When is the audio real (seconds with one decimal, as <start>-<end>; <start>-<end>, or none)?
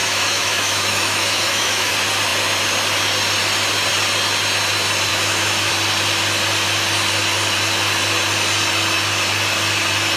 1.9-5.1; 5.7-10.2